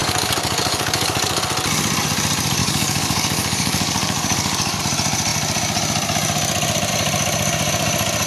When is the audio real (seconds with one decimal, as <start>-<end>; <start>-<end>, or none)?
1.4-2.6; 4.8-8.3